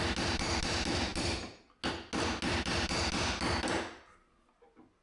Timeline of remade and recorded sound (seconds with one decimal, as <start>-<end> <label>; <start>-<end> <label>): 0.0-5.0 recorded